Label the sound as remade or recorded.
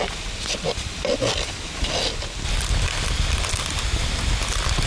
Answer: recorded